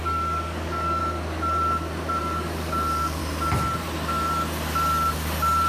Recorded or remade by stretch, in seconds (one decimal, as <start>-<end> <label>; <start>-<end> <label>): 0.0-1.0 remade; 1.0-2.2 recorded; 2.2-3.2 remade; 3.2-5.7 recorded